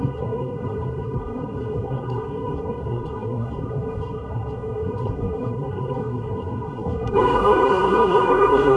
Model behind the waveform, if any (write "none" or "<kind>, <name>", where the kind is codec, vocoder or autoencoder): codec, SNAC